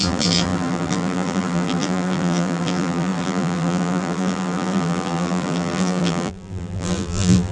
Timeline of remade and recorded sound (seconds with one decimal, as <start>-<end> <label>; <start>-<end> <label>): 0.0-7.5 remade